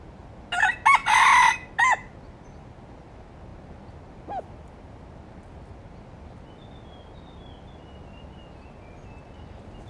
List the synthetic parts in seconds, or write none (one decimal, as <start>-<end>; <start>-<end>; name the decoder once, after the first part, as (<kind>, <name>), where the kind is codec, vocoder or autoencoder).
none